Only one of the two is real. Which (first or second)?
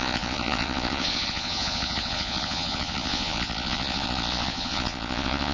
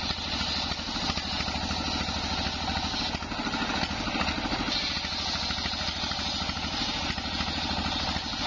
second